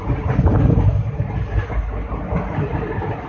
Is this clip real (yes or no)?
yes